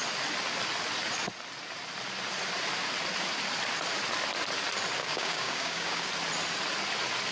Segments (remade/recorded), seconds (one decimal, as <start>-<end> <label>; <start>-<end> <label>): 0.0-5.0 recorded; 5.0-6.1 remade; 6.1-7.3 recorded